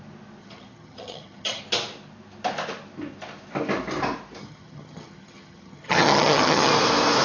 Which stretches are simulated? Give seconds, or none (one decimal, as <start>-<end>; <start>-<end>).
0.4-1.6; 4.4-6.7